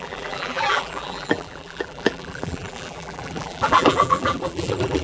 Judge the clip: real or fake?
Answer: fake